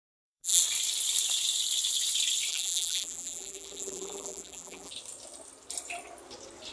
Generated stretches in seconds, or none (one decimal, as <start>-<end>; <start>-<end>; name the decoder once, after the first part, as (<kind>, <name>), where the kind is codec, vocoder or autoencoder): 0.0-0.6 (vocoder, BigVGAN v2); 2.5-4.9